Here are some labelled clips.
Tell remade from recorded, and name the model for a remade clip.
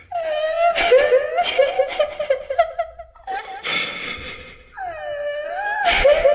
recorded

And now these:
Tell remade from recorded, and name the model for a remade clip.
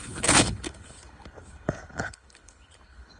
remade, codec, HILCodec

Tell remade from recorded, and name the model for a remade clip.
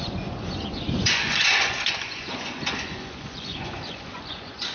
remade, vocoder, Vocos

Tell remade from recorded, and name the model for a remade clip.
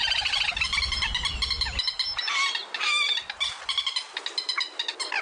recorded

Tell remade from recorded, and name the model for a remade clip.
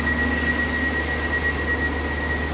recorded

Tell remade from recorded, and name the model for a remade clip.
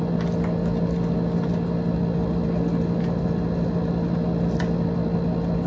recorded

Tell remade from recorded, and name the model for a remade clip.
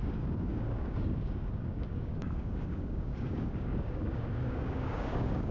remade, codec, DAC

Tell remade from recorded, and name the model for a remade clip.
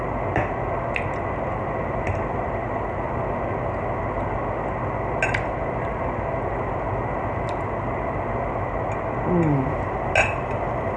recorded